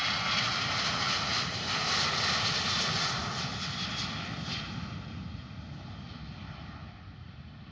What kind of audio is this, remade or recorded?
recorded